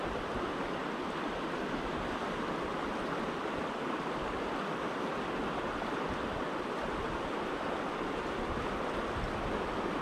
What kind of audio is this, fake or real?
real